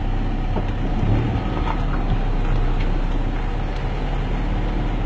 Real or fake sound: real